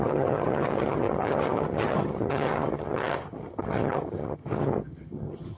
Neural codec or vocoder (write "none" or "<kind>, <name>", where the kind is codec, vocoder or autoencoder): vocoder, HiFi-GAN